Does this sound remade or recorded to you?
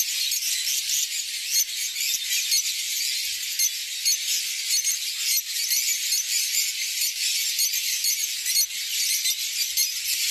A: recorded